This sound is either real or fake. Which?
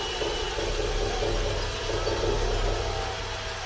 real